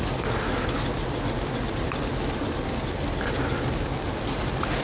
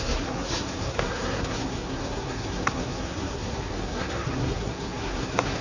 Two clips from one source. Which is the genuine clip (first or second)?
first